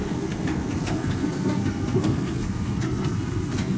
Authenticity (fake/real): fake